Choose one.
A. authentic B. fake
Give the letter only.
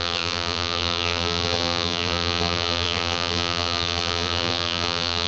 B